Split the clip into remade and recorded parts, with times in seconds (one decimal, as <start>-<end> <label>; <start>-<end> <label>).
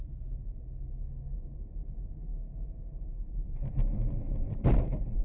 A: 0.0-0.4 remade; 0.4-1.3 recorded; 1.3-5.2 remade